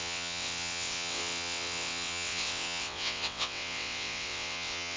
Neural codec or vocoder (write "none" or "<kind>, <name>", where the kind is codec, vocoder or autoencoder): vocoder, WaveNeXt